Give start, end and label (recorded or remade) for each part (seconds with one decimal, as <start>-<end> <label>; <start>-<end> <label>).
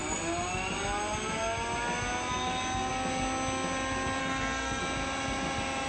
0.0-4.2 recorded; 4.2-4.8 remade; 4.8-5.9 recorded